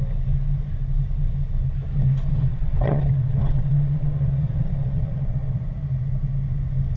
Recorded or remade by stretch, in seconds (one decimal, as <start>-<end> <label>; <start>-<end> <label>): 0.0-2.5 recorded; 2.5-5.6 remade; 5.6-7.0 recorded